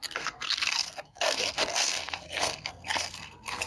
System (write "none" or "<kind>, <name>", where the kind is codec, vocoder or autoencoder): codec, SNAC